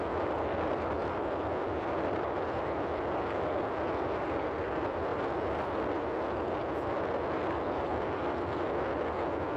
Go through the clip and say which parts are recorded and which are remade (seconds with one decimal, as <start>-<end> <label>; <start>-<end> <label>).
0.0-9.6 recorded